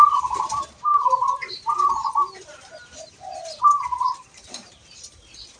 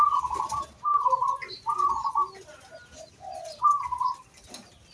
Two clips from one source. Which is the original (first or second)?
second